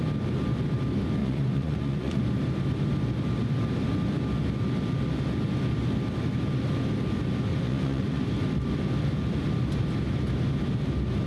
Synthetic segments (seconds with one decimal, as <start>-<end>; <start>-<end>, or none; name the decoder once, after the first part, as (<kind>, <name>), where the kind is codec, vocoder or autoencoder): 1.2-2.2 (vocoder, Vocos); 7.5-8.2